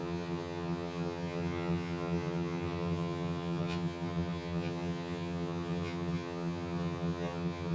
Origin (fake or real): fake